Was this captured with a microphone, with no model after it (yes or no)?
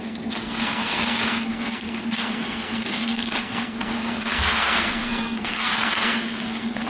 no